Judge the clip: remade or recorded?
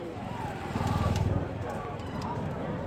remade